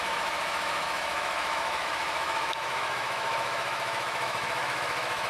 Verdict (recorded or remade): remade